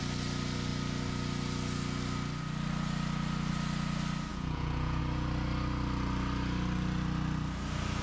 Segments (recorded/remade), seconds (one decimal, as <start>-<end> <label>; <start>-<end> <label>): 0.0-4.3 recorded; 4.3-5.0 remade; 5.0-8.0 recorded